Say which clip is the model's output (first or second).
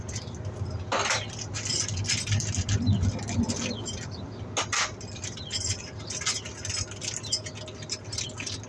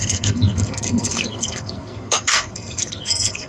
second